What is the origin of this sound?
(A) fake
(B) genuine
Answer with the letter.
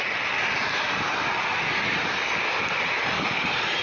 B